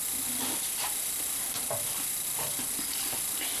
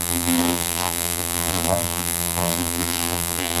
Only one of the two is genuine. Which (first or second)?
first